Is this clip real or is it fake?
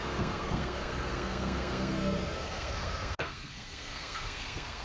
fake